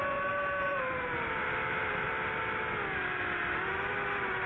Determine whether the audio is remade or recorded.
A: recorded